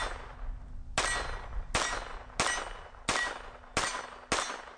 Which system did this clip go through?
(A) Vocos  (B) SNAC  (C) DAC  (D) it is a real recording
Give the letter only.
D